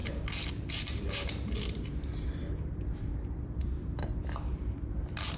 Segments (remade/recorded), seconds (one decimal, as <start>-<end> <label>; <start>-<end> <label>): 0.0-0.5 recorded; 0.5-5.4 remade